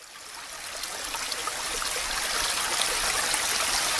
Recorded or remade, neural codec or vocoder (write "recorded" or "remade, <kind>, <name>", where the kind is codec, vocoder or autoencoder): recorded